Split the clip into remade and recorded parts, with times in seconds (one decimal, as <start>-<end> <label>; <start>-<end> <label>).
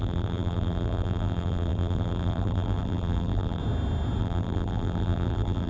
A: 0.0-3.6 remade; 3.6-4.2 recorded; 4.2-5.7 remade